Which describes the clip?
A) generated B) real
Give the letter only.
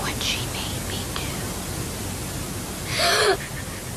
B